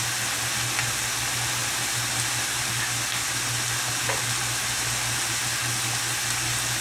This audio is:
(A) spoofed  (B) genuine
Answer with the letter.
B